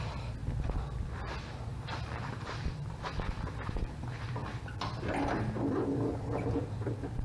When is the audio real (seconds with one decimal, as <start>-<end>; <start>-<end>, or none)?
0.0-0.4; 1.1-1.7; 5.0-7.2